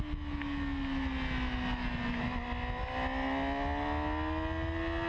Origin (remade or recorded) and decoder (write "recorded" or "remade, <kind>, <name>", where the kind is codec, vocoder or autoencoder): recorded